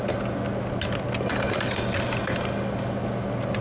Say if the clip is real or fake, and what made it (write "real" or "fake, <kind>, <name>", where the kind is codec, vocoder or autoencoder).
real